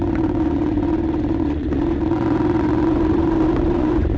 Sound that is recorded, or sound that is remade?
remade